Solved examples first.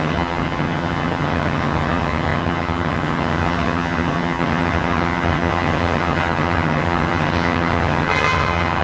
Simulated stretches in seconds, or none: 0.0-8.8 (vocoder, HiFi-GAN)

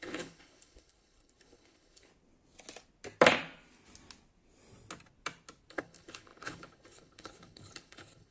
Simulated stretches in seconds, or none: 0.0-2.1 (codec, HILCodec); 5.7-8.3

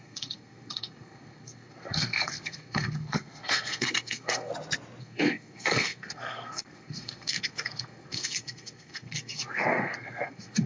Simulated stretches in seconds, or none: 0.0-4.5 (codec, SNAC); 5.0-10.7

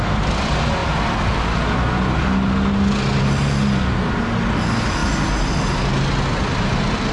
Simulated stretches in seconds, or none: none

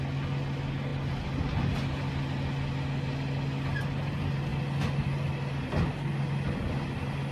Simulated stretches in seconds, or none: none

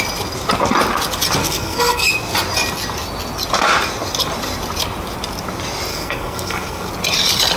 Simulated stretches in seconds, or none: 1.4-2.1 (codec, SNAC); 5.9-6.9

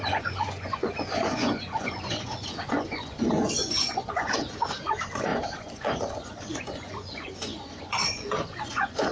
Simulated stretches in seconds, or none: 0.0-9.1 (vocoder, Vocos)

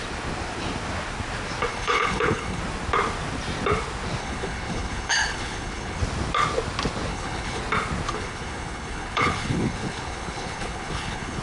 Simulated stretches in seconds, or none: 1.7-2.6 (codec, HILCodec); 4.2-6.0; 7.1-7.6; 8.1-11.4